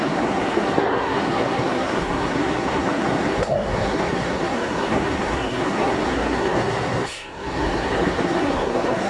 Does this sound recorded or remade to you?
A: remade